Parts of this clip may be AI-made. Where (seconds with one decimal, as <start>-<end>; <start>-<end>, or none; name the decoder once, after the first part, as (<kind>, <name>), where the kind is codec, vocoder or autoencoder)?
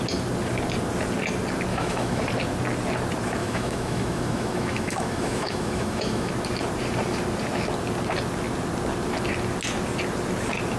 1.7-2.2 (autoencoder, DAC-VAE); 3.4-6.3